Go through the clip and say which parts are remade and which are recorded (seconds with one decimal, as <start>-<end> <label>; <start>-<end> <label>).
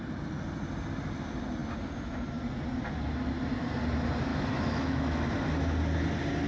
0.0-4.3 recorded; 4.3-5.3 remade; 5.3-6.5 recorded